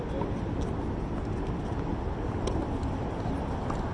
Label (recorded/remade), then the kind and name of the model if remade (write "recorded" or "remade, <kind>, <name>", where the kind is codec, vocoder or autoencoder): recorded